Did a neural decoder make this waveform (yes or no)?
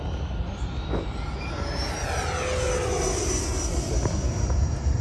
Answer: no